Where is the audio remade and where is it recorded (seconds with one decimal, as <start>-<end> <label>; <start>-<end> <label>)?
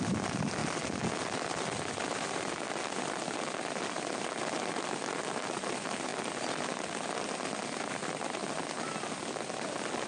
0.0-10.1 recorded